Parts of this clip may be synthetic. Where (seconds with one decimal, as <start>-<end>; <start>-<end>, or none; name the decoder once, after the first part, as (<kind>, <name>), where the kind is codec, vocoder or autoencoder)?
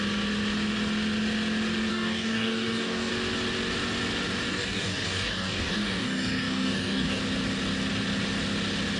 1.9-3.1 (codec, DAC); 4.5-7.2